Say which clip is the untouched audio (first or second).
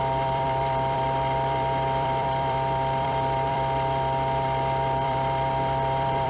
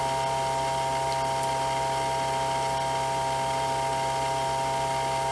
second